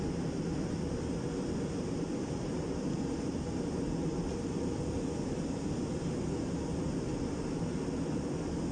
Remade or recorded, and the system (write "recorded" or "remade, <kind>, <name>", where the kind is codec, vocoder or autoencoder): recorded